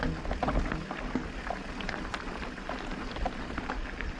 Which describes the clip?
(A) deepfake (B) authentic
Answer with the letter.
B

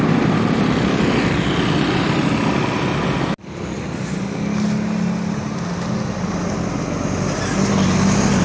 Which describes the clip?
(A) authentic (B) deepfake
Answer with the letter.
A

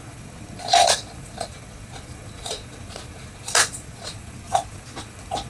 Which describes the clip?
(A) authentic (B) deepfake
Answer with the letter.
B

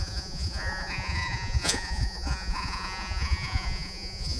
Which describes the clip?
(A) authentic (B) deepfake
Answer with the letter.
B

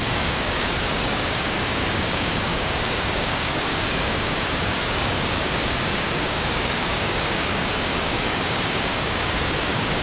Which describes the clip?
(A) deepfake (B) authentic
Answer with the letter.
A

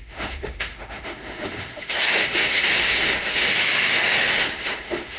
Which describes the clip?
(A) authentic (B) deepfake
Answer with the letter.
B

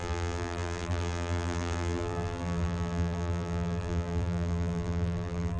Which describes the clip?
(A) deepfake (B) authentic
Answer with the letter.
A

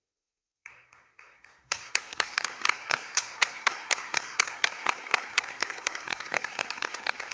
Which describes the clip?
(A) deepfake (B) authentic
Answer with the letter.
A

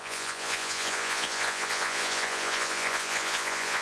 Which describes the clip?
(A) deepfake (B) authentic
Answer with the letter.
A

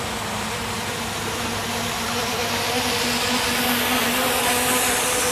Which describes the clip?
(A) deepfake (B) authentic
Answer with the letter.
B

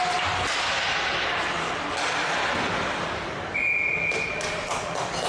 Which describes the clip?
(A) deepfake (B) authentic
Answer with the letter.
B